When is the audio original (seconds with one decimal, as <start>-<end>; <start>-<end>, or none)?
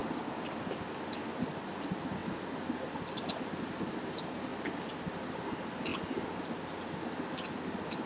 0.0-8.1